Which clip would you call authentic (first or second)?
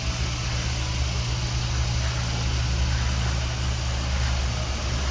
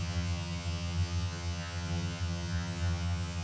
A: first